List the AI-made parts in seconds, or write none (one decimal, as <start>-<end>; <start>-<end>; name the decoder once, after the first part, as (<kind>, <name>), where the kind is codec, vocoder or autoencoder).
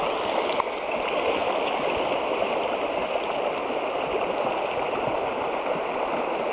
none